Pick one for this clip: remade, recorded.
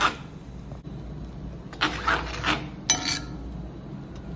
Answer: recorded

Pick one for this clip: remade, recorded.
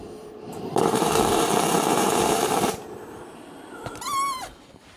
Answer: remade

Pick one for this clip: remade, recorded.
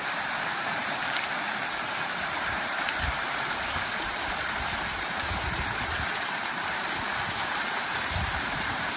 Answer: remade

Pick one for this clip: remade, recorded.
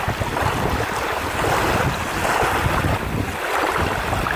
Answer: recorded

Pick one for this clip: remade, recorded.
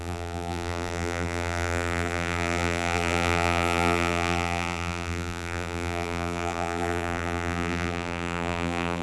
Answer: remade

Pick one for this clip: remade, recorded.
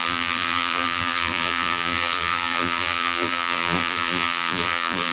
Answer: remade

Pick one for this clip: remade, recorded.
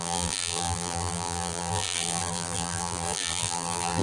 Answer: remade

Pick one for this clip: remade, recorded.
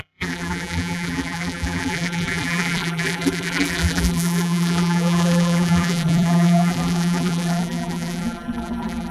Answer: remade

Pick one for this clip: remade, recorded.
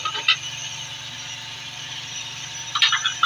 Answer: remade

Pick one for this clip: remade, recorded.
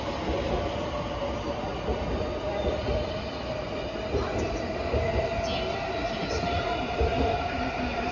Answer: recorded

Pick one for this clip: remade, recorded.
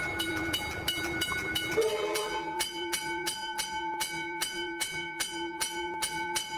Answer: remade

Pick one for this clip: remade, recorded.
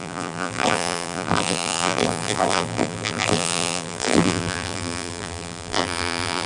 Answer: remade